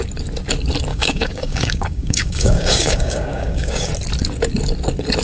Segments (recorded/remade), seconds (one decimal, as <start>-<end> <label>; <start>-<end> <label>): 0.0-0.9 recorded; 0.9-3.9 remade; 3.9-5.2 recorded